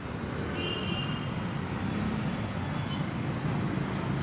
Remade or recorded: recorded